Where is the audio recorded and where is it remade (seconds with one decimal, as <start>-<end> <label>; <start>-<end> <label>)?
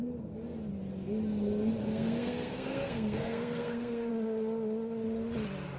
0.0-1.8 recorded; 1.8-4.1 remade; 4.1-5.8 recorded